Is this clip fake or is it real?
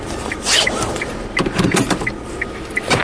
fake